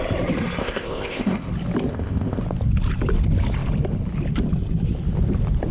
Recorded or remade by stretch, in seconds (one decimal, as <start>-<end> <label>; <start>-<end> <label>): 0.0-0.6 recorded; 0.6-1.5 remade; 1.5-1.9 recorded; 1.9-2.4 remade; 2.4-5.7 recorded